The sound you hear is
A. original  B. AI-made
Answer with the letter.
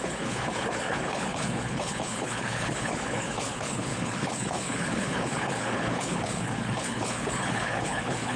B